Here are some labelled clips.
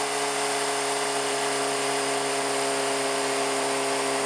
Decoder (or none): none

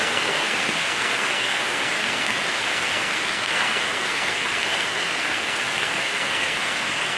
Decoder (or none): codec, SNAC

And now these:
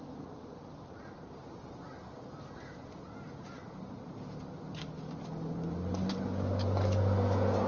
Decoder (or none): none